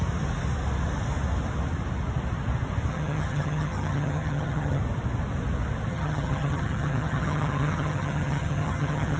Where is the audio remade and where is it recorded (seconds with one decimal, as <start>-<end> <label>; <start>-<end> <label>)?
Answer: 0.0-2.9 recorded; 2.9-4.8 remade; 4.8-5.9 recorded; 5.9-9.2 remade